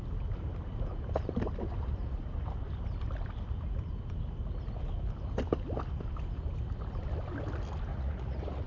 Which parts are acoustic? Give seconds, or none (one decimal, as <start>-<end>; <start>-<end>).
0.0-7.9